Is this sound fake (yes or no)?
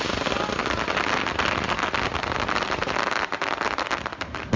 no